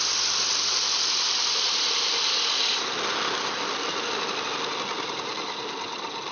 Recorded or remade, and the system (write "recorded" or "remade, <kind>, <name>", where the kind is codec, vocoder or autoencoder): recorded